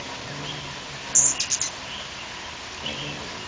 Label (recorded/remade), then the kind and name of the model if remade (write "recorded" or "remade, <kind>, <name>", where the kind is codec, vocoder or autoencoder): recorded